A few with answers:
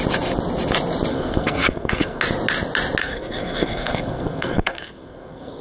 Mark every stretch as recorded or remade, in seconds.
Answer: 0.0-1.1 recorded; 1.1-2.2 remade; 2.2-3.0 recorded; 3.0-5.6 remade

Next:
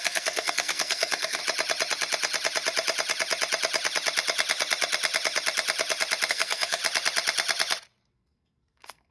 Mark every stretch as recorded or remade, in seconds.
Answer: 0.0-1.4 remade; 1.4-6.3 recorded; 6.3-6.8 remade; 6.8-8.1 recorded; 8.1-9.1 remade

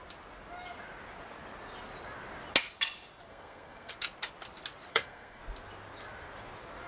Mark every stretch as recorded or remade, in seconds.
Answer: 0.0-3.3 recorded; 3.3-3.9 remade; 3.9-4.9 recorded; 4.9-5.4 remade; 5.4-6.9 recorded

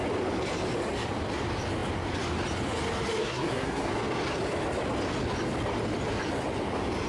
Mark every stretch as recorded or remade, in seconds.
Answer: 0.0-3.2 recorded; 3.2-3.9 remade; 3.9-7.1 recorded

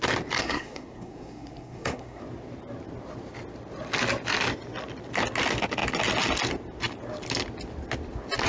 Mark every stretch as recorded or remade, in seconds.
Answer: 0.0-0.4 recorded; 0.4-2.2 remade; 2.2-8.5 recorded

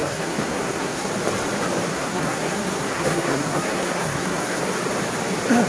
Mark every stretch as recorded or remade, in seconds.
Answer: 0.0-1.1 remade; 1.1-1.9 recorded; 1.9-4.6 remade; 4.6-5.7 recorded

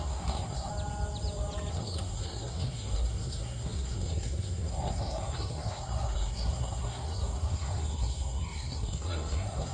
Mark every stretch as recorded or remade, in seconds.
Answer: 0.0-0.7 remade; 0.7-1.7 recorded; 1.7-9.7 remade

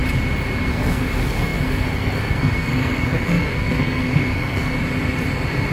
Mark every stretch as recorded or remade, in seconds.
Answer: 0.0-0.6 recorded; 0.6-4.8 remade; 4.8-5.7 recorded